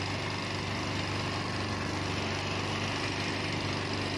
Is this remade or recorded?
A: recorded